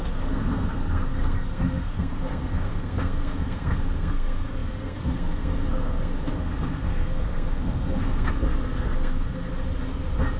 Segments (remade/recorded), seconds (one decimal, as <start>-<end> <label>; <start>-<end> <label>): 0.0-9.5 remade; 9.5-10.4 recorded